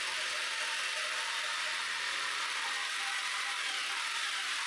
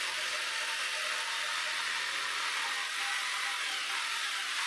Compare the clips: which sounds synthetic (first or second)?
first